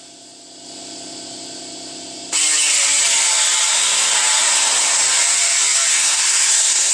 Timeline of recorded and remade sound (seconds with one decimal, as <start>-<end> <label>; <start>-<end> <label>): 0.0-5.9 recorded; 5.9-6.9 remade